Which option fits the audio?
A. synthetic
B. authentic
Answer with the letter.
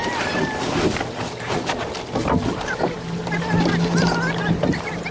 B